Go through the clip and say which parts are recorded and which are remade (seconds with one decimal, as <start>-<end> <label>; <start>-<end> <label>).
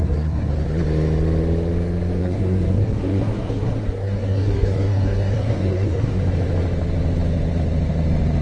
0.0-0.5 remade; 0.5-2.2 recorded; 2.2-6.2 remade; 6.2-8.4 recorded